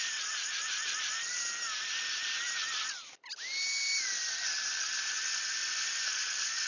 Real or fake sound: real